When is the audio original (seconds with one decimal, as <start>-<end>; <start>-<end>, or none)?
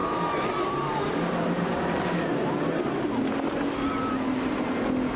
3.0-5.2